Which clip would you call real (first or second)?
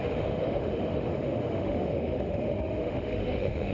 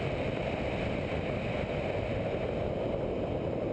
second